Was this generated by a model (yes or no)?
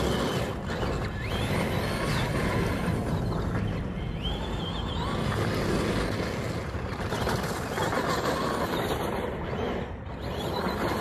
no